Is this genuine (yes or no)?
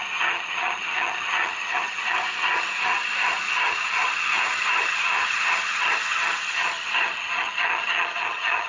no